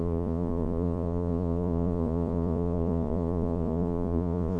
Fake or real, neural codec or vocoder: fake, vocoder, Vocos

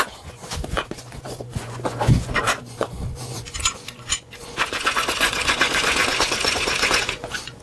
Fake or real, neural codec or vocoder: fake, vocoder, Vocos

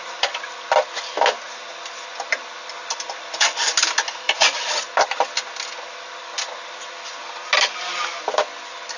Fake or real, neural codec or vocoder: real